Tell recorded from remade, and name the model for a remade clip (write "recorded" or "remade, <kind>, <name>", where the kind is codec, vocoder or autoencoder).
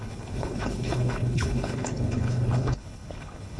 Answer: remade, codec, HILCodec